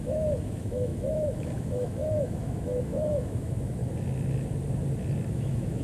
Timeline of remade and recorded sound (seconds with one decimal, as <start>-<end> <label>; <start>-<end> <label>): 0.0-3.8 remade; 3.8-5.3 recorded; 5.3-5.8 remade